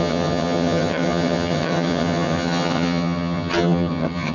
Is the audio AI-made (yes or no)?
yes